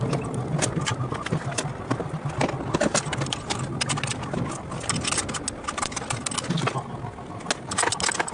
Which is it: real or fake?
real